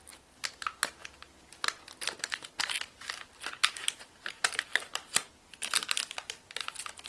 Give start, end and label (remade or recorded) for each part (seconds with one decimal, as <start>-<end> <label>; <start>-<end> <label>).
0.0-7.1 recorded